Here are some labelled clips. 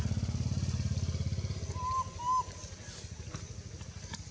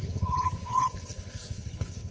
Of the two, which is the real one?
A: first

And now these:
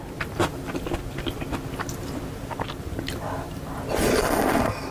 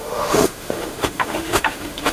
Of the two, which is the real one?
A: first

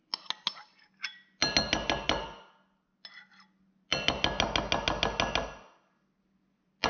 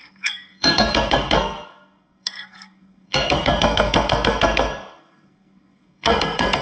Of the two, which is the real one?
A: first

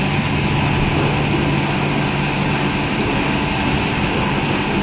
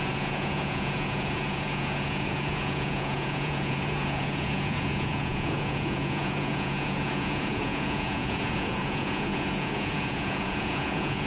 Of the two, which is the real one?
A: first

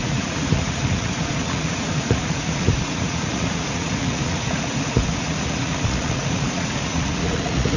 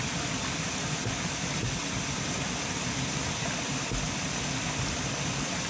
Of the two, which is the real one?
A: second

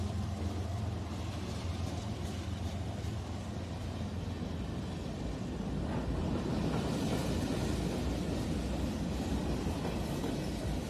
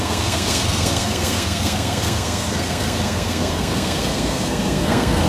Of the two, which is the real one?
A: first